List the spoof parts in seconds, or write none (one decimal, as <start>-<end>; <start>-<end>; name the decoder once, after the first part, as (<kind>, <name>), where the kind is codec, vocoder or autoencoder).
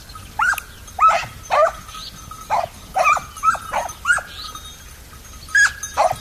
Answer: none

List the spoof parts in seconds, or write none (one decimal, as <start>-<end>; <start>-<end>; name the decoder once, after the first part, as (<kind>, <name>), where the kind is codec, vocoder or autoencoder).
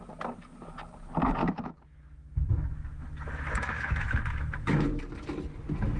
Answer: 1.4-5.0 (autoencoder, DAC-VAE)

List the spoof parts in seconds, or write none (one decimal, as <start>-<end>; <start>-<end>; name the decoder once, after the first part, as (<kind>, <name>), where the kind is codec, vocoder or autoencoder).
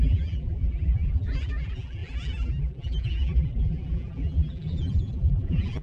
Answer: 0.0-5.8 (vocoder, BigVGAN v2)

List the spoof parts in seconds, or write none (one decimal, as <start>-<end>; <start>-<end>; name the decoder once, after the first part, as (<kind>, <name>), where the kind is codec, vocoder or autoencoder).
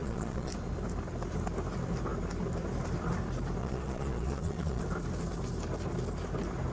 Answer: 0.0-0.5 (vocoder, Vocos); 3.6-4.8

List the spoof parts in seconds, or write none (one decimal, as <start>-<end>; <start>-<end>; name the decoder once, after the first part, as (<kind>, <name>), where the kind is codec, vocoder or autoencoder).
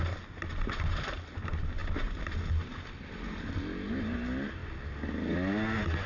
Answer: none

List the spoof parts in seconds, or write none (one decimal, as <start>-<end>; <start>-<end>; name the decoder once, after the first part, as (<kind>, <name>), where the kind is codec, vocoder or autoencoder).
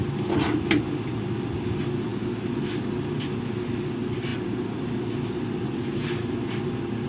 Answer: none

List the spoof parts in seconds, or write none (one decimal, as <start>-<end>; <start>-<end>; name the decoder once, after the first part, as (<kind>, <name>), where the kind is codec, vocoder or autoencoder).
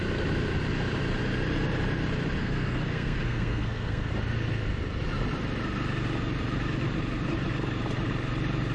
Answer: 2.4-4.1 (codec, SNAC)